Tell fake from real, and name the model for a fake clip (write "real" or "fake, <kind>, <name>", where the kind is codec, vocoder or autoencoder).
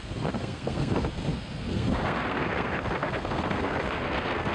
fake, codec, SNAC